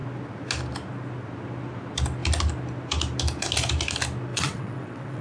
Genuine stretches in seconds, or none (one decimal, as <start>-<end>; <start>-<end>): 0.0-4.3